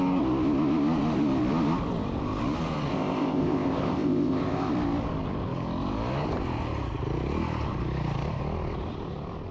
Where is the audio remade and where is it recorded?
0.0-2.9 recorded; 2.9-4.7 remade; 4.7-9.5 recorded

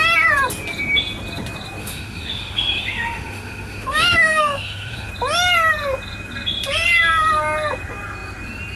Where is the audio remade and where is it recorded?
0.0-1.8 recorded; 1.8-5.1 remade; 5.1-8.8 recorded

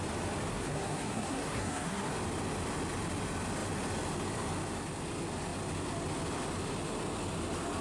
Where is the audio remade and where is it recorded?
0.0-0.5 recorded; 0.5-2.1 remade; 2.1-7.8 recorded